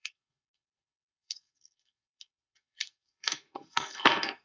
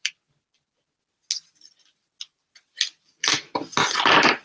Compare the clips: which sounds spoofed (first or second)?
first